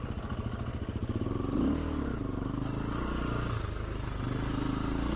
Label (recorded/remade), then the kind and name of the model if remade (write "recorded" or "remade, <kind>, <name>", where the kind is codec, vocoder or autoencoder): recorded